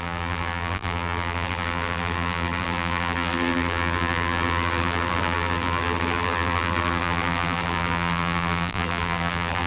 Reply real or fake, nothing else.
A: fake